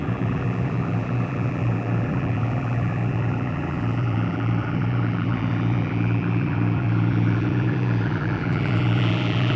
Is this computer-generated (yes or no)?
yes